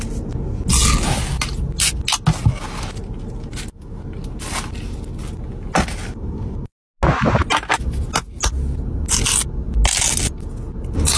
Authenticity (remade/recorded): recorded